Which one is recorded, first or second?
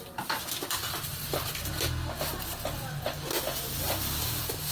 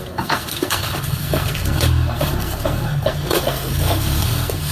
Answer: first